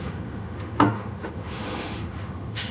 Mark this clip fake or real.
fake